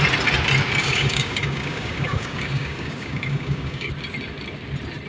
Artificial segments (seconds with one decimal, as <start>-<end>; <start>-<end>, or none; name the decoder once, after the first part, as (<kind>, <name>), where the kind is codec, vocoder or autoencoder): 0.8-3.9 (codec, DAC)